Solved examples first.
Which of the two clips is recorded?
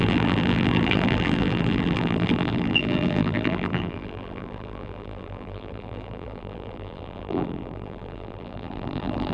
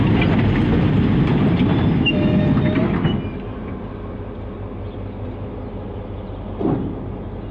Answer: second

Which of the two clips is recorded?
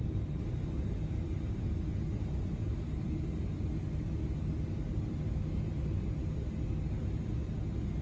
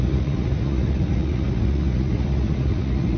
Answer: first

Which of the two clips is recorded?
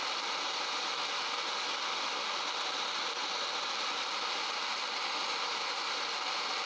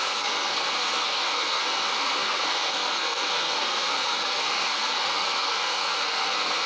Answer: first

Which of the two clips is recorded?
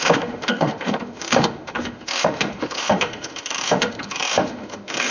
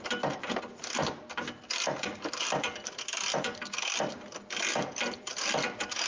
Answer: second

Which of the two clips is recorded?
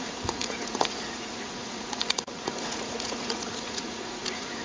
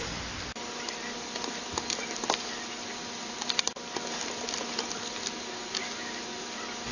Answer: second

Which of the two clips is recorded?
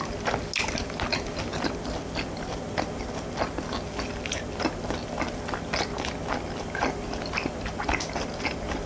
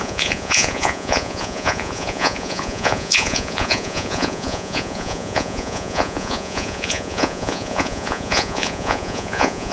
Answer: first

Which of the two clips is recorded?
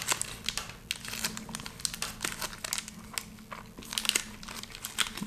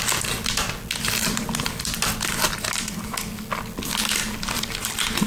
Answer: first